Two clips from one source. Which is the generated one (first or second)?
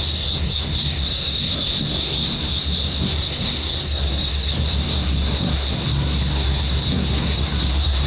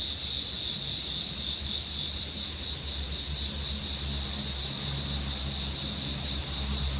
first